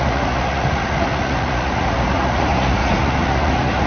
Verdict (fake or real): fake